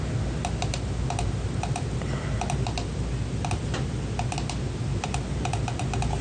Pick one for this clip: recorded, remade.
recorded